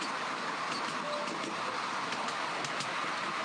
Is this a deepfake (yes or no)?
no